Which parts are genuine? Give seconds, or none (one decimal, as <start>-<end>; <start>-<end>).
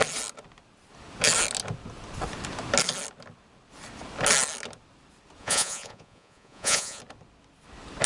0.0-5.4; 7.0-8.1